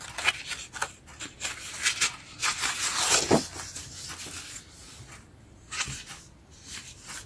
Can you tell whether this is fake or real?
real